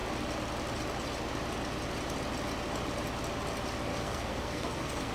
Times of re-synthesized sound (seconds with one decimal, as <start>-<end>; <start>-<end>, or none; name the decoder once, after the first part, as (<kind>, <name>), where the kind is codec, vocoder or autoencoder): 3.9-5.1 (codec, SNAC)